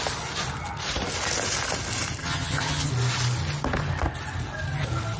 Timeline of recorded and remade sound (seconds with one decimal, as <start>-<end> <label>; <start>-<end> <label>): 0.0-2.2 recorded; 2.2-2.9 remade; 2.9-5.2 recorded